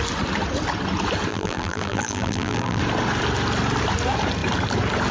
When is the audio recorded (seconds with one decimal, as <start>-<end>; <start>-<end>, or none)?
0.0-1.3; 2.8-5.1